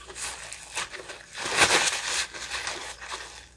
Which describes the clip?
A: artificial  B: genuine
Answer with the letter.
B